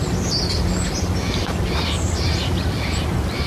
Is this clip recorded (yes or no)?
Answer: yes